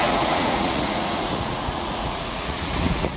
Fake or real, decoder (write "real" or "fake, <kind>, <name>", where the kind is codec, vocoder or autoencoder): fake, vocoder, Vocos